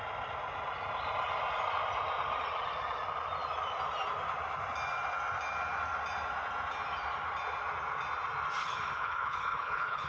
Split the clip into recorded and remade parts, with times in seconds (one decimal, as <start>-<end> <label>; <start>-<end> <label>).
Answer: 0.0-8.6 recorded; 8.6-10.1 remade